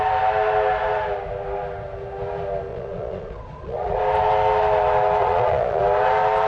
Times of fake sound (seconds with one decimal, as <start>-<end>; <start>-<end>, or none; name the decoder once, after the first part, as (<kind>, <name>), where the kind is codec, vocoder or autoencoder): 2.7-4.0 (vocoder, Vocos); 5.2-5.8

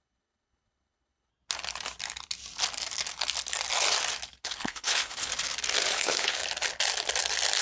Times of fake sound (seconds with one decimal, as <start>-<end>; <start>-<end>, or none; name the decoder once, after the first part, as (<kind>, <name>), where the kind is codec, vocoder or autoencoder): 0.0-1.3 (codec, HILCodec); 4.4-5.3; 5.9-6.4